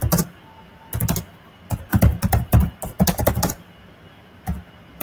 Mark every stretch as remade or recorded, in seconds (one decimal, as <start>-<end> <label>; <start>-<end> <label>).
0.0-5.0 recorded